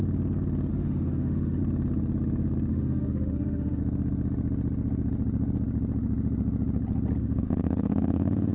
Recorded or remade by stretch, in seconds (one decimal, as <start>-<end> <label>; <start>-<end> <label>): 0.0-0.7 recorded; 0.7-1.6 remade; 1.6-2.7 recorded; 2.7-3.8 remade; 3.8-7.2 recorded; 7.2-8.5 remade